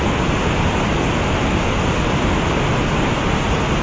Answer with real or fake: real